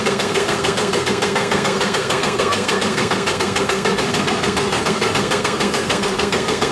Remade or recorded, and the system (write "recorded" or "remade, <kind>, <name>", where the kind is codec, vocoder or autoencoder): remade, codec, SNAC